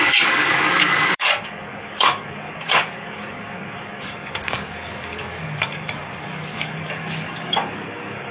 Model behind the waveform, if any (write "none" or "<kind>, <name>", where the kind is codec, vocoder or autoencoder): codec, DAC